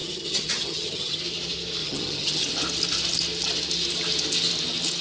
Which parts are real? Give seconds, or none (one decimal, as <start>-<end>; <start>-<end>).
1.2-1.8; 2.5-5.0